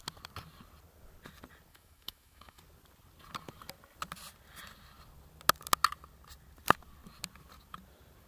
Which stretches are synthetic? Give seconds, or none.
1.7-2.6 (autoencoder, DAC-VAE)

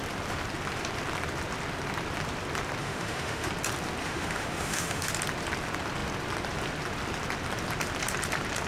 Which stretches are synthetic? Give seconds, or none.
2.8-3.5 (autoencoder, DAC-VAE); 4.0-5.1

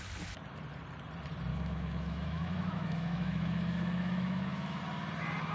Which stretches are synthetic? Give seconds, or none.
1.5-4.8 (autoencoder, DAC-VAE)

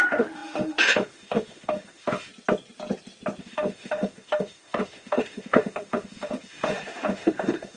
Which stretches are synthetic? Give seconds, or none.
0.0-2.3 (autoencoder, DAC-VAE); 3.4-7.8

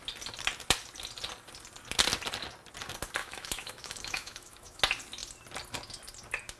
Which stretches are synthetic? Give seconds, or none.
3.2-4.8 (autoencoder, DAC-VAE)

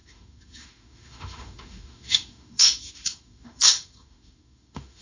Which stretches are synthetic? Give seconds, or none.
0.0-5.0 (autoencoder, DAC-VAE)